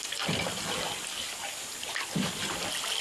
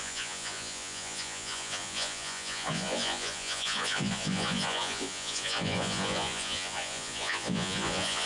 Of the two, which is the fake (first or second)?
second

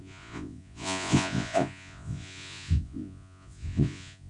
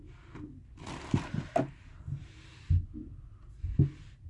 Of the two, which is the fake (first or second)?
first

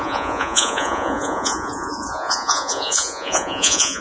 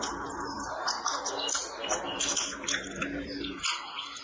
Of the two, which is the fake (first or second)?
first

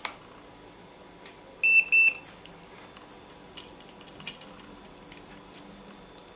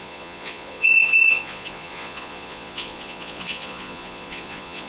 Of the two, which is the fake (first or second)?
second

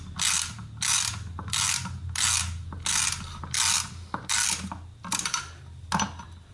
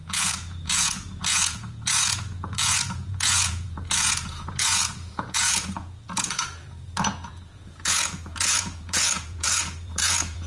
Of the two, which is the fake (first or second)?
second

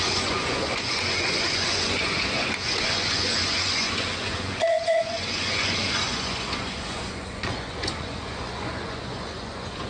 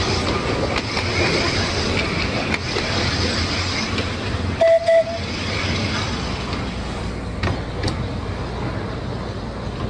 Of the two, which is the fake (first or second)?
first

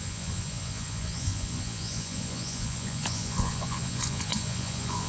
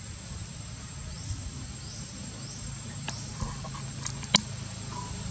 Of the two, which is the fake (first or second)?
first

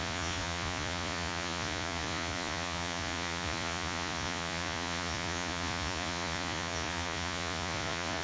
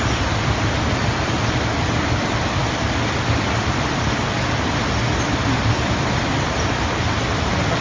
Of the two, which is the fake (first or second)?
first